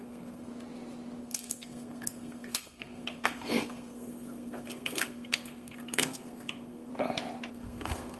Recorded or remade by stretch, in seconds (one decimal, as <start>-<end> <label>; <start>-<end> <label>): 0.0-0.5 remade; 0.5-1.2 recorded; 1.2-6.9 remade; 6.9-7.5 recorded; 7.5-8.2 remade